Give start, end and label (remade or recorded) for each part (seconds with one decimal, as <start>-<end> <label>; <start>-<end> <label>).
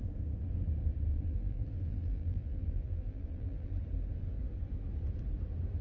0.0-1.1 recorded; 1.1-3.7 remade; 3.7-5.8 recorded